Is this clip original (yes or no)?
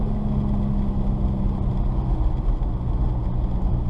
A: yes